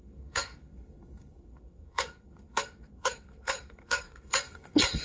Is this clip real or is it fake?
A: fake